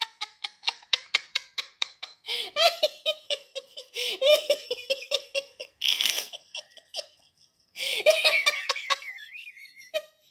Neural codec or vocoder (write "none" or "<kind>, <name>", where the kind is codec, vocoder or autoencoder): codec, SNAC